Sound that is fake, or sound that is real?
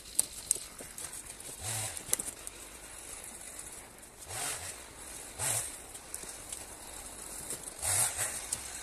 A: real